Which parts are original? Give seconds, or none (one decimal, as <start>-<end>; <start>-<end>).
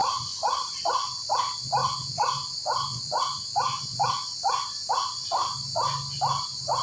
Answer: 0.0-6.8